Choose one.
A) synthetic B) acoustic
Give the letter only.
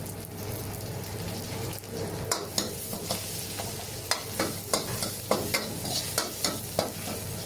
B